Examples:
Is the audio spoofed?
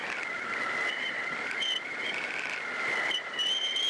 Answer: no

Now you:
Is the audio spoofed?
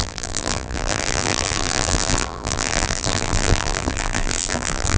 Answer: yes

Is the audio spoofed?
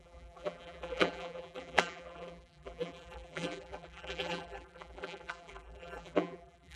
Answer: yes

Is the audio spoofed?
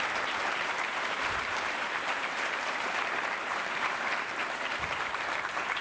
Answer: yes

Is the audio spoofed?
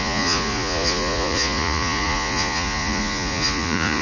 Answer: yes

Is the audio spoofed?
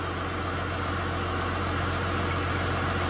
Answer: no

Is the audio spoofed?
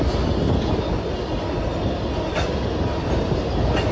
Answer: no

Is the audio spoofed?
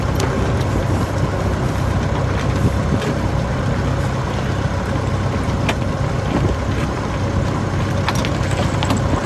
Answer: no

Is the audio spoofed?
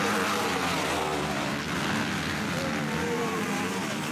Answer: no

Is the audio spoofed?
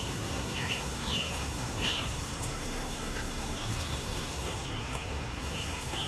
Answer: yes